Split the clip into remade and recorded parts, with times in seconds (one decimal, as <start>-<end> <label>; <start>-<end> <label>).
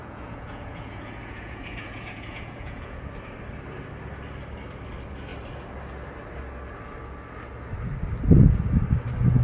0.0-3.1 remade; 3.1-9.4 recorded